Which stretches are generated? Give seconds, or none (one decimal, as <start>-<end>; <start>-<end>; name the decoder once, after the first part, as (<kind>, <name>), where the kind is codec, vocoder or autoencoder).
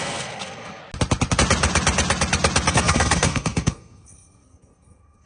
0.0-0.8 (codec, SNAC); 2.7-5.3